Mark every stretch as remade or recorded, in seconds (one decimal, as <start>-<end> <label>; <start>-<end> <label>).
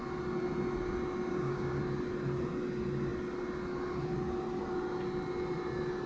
0.0-1.3 recorded; 1.3-1.8 remade; 1.8-6.1 recorded